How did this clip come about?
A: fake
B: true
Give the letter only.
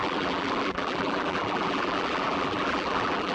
A